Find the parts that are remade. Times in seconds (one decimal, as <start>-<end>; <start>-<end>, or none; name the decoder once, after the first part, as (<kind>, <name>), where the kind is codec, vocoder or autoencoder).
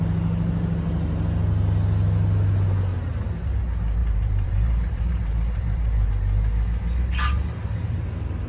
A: 4.0-6.1 (vocoder, BigVGAN v2)